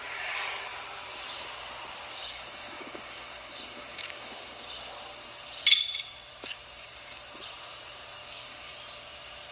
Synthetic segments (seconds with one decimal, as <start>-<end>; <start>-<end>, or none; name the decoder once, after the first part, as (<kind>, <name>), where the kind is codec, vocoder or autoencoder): 2.2-4.6 (codec, DAC); 8.2-8.7